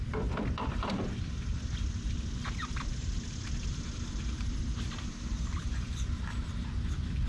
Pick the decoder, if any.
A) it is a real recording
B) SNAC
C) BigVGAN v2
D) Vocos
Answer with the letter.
C